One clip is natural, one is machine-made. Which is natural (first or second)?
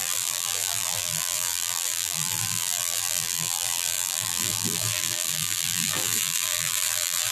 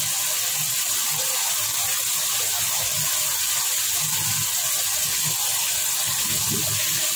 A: second